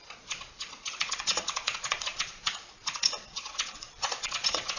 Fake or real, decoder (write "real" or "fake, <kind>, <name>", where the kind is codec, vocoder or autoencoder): fake, vocoder, Vocos